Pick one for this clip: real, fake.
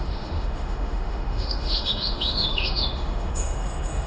fake